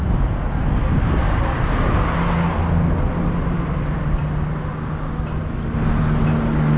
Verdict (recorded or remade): recorded